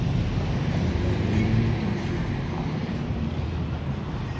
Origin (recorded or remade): recorded